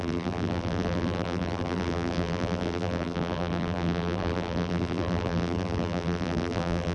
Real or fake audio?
fake